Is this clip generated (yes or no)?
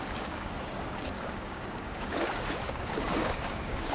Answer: yes